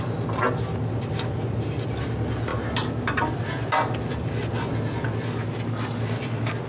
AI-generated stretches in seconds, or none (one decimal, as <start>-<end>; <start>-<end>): none